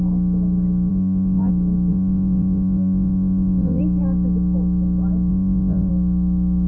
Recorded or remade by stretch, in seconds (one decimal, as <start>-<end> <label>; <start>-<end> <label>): 0.0-0.9 recorded; 0.9-1.5 remade; 1.5-1.9 recorded; 1.9-3.8 remade; 3.8-5.3 recorded; 5.3-5.9 remade; 5.9-6.7 recorded